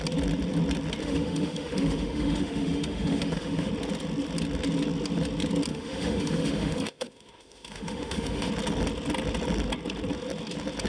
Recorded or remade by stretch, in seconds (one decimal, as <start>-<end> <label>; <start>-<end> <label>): 0.0-1.0 recorded; 1.0-3.7 remade; 3.7-5.7 recorded; 5.7-8.5 remade; 8.5-10.9 recorded

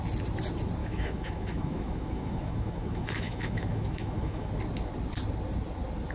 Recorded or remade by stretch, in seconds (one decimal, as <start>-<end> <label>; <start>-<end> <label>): 0.0-0.8 recorded; 0.8-4.5 remade; 4.5-6.1 recorded

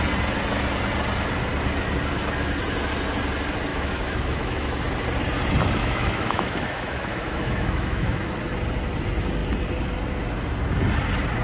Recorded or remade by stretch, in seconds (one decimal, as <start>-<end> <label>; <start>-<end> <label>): 0.0-3.7 recorded; 3.7-4.8 remade; 4.8-5.8 recorded; 5.8-8.3 remade; 8.3-11.4 recorded

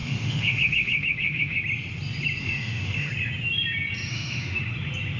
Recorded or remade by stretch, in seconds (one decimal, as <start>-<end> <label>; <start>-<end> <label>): 0.0-1.6 remade; 1.6-2.4 recorded; 2.4-3.1 remade; 3.1-4.1 recorded; 4.1-4.6 remade; 4.6-5.2 recorded

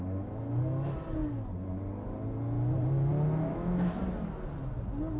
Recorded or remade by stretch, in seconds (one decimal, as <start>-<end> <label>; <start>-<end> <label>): 0.0-3.5 recorded; 3.5-4.0 remade; 4.0-5.2 recorded

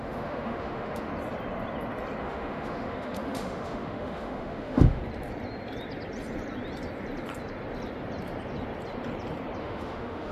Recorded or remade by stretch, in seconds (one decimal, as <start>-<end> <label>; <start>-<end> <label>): 0.0-1.1 remade; 1.1-2.2 recorded; 2.2-5.0 remade; 5.0-9.6 recorded; 9.6-10.3 remade

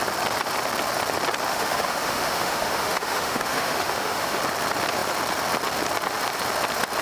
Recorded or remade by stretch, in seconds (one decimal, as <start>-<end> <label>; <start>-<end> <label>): 0.0-1.5 recorded; 1.5-4.4 remade; 4.4-7.0 recorded